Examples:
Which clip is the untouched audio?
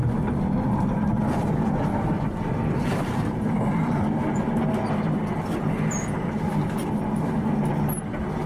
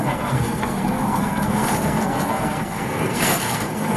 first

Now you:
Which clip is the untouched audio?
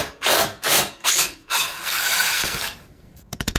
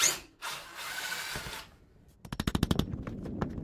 second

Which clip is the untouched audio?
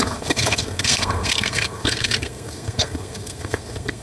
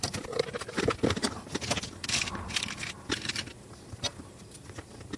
second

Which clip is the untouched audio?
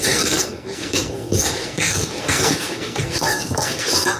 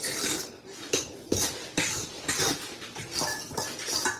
second